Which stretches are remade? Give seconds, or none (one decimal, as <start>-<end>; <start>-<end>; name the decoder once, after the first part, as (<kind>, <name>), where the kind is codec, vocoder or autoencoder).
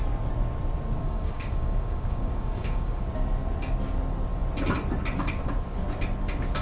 1.0-3.0 (codec, DAC)